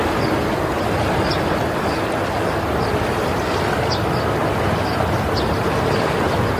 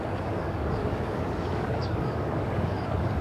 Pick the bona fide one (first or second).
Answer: first